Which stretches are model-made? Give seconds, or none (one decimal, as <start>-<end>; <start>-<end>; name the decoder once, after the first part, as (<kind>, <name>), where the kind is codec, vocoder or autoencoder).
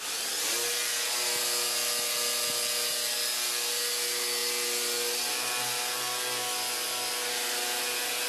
none